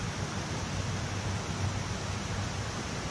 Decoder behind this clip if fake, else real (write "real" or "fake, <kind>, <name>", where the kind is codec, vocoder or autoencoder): real